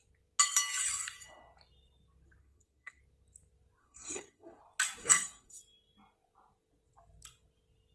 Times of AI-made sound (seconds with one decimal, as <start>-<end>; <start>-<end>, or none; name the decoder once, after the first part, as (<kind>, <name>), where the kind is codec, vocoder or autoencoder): 2.4-3.0 (codec, SNAC); 3.8-4.6; 5.0-5.6